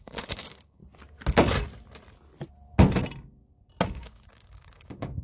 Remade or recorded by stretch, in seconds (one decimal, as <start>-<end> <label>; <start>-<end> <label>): 0.0-0.8 remade; 0.8-3.9 recorded; 3.9-5.2 remade